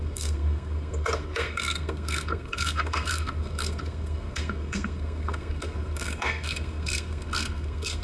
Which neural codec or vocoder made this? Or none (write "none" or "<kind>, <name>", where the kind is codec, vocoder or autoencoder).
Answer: codec, SNAC